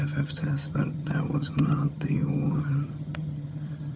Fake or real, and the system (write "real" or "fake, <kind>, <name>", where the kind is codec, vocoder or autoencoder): fake, vocoder, HiFi-GAN